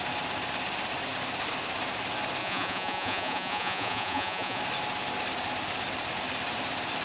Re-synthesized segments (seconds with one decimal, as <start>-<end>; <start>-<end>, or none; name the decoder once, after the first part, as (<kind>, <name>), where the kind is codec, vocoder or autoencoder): 2.4-4.6 (vocoder, Vocos)